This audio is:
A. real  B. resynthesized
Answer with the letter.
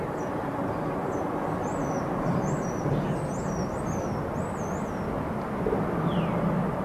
A